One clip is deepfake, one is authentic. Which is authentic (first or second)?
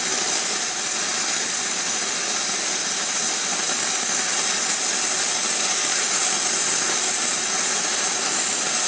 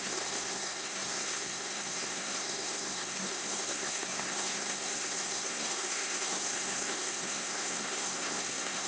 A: first